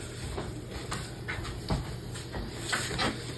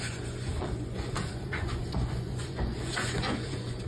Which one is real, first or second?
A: first